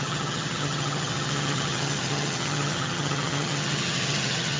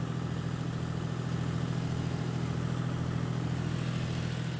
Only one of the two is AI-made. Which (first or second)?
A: first